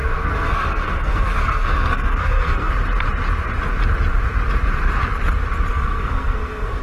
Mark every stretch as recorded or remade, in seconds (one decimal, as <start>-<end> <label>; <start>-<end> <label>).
0.0-2.7 remade; 2.7-5.7 recorded; 5.7-6.8 remade